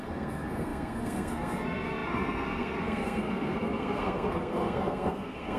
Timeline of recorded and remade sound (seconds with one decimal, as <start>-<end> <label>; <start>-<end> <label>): 0.0-5.6 remade